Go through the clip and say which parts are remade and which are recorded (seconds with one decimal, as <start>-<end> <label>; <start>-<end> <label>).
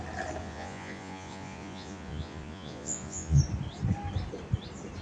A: 0.0-0.4 recorded; 0.4-3.4 remade; 3.4-5.0 recorded